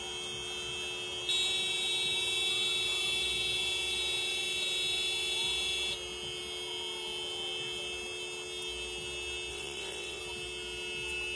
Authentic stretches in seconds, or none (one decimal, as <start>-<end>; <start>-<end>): 0.0-9.5; 10.2-11.4